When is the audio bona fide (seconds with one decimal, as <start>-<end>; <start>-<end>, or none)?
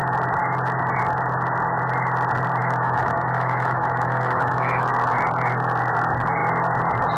0.0-2.6; 4.9-7.2